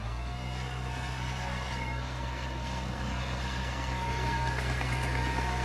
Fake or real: fake